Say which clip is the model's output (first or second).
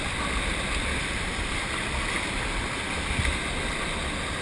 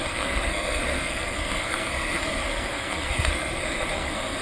second